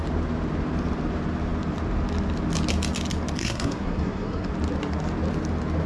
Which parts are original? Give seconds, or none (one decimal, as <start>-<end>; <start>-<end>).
0.0-3.4; 4.5-5.9